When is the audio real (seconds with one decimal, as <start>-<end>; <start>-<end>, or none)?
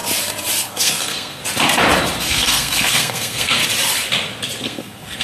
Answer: 0.0-0.6; 1.4-2.2; 3.6-4.6